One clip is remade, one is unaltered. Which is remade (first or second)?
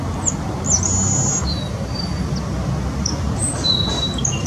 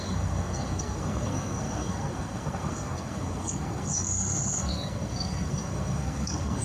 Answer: second